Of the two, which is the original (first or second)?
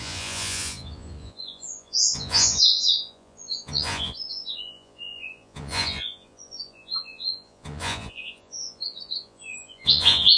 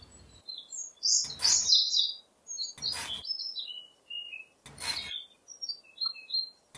second